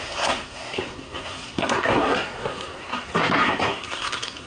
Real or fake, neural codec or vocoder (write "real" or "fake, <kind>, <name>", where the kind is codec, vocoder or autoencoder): fake, codec, SNAC